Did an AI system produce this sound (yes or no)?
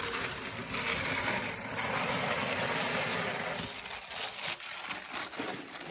no